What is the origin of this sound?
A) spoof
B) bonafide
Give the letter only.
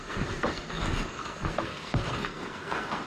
A